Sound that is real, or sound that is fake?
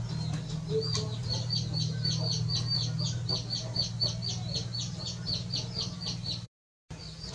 real